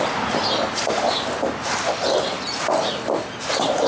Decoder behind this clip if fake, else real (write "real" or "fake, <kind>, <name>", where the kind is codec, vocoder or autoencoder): real